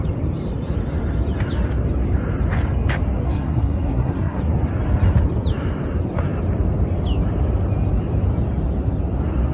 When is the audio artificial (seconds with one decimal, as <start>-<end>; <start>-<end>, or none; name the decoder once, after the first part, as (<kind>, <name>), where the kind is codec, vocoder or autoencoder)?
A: 3.2-4.4 (codec, SNAC)